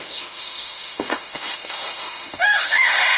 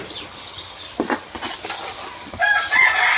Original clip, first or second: second